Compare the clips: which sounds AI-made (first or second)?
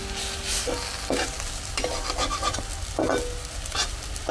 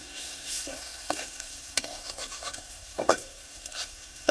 second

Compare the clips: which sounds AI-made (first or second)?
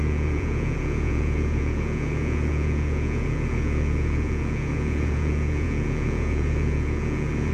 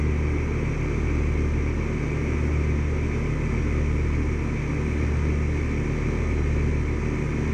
first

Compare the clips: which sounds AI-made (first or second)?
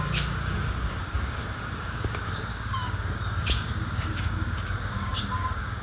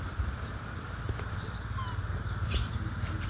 first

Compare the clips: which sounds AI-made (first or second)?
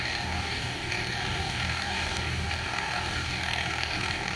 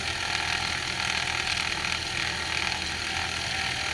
first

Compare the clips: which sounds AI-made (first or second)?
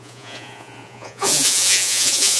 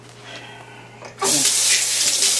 first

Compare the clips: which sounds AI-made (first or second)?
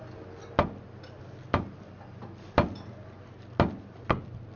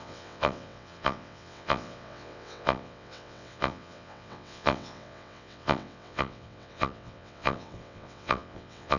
second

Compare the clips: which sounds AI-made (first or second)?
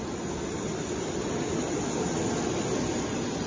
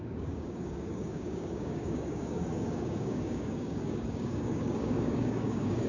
second